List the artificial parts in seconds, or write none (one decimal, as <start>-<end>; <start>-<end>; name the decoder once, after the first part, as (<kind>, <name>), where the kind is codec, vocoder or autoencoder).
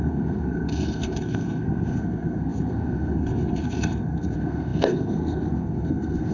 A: 0.0-6.3 (codec, SNAC)